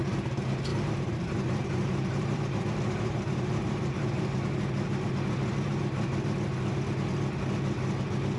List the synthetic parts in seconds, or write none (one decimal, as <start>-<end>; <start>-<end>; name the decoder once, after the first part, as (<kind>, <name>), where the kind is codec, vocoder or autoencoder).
0.7-4.4 (vocoder, BigVGAN v2)